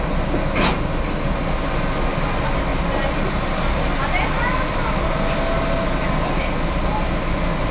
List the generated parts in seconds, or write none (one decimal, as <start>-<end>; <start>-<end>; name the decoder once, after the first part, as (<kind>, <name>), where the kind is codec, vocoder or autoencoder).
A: none